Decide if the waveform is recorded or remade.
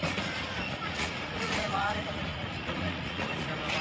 remade